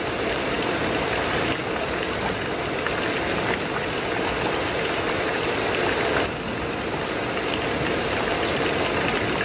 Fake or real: real